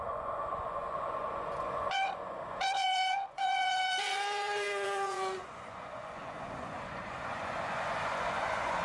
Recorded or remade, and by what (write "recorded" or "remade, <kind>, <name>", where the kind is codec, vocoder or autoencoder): remade, vocoder, Vocos